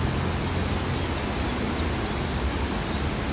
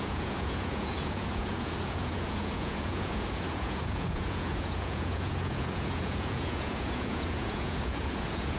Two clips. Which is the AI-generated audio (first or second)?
second